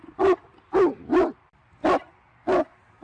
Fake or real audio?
real